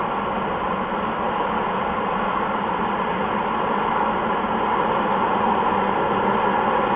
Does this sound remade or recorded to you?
recorded